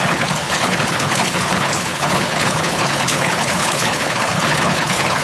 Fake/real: fake